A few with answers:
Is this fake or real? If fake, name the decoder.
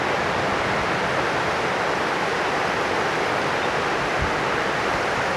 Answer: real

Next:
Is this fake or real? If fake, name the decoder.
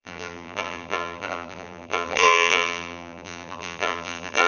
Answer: fake, vocoder, BigVGAN v2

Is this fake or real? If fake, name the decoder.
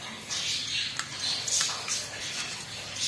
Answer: real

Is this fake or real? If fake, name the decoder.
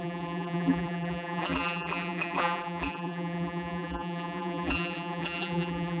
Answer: fake, vocoder, BigVGAN v2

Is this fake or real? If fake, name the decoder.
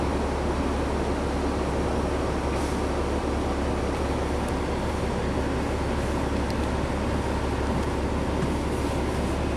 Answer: real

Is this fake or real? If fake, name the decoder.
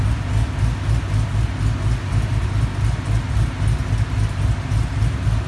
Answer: real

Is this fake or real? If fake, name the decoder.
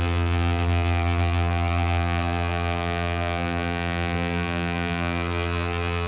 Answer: fake, vocoder, BigVGAN v2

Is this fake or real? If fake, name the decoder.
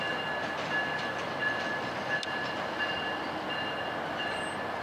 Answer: real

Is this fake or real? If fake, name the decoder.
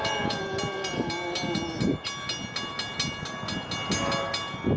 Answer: real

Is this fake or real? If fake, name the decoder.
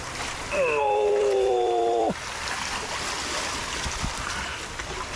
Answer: fake, vocoder, BigVGAN v2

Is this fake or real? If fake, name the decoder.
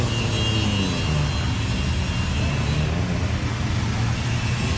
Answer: real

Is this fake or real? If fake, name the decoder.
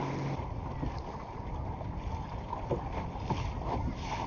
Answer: real